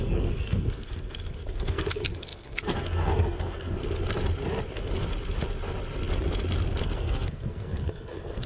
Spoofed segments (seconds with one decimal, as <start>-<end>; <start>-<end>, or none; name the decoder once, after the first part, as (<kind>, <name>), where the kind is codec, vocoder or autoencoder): 0.0-3.8 (codec, SNAC); 6.8-8.5